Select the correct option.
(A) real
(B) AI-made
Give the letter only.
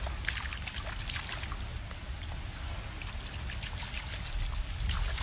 A